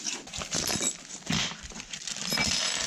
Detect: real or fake real